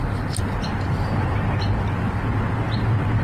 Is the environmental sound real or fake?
real